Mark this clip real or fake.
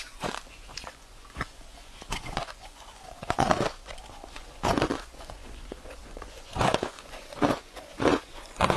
fake